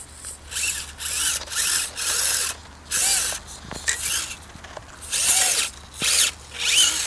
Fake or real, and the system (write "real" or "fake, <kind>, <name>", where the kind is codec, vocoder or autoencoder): real